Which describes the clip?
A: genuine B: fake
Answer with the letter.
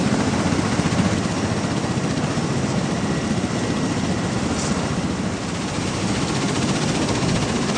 A